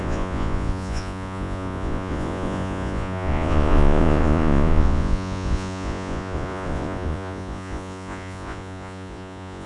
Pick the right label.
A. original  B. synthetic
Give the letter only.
B